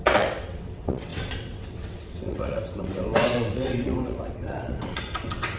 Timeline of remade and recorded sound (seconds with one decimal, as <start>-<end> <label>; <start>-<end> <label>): 0.0-5.6 remade